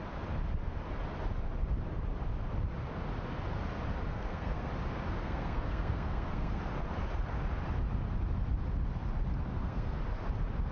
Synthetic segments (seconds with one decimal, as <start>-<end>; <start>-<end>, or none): 4.1-4.7; 5.2-6.6; 9.5-10.0